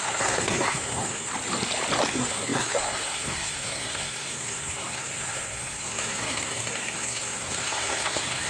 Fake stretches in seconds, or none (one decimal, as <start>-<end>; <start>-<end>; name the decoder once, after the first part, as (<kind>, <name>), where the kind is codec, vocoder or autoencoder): 0.0-1.3 (codec, SNAC); 2.1-8.5